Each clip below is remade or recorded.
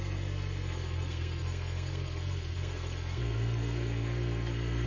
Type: remade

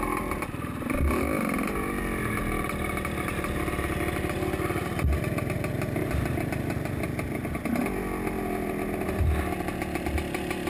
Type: recorded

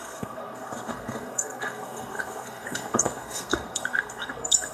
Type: remade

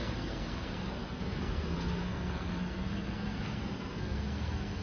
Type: remade